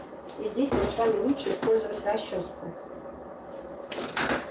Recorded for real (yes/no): yes